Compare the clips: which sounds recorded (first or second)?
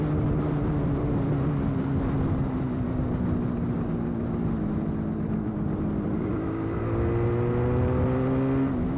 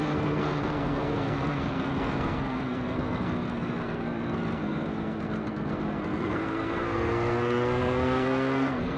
first